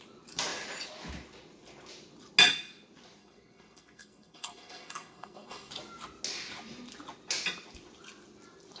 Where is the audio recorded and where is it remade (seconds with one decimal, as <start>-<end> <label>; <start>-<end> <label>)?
0.0-3.2 recorded; 3.2-5.7 remade; 5.7-8.8 recorded